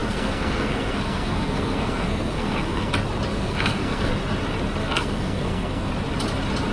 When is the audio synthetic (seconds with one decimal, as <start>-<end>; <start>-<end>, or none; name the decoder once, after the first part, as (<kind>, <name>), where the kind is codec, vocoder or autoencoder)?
0.0-2.9 (codec, SNAC); 3.3-4.1; 4.8-5.9